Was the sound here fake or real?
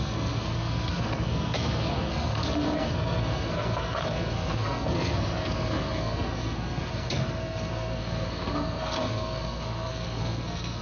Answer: fake